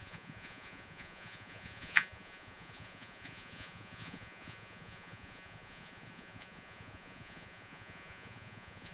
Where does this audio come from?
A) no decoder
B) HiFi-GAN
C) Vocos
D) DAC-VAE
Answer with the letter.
C